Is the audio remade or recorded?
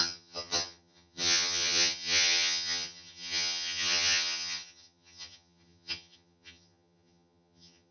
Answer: remade